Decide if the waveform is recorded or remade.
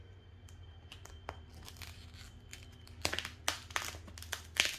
recorded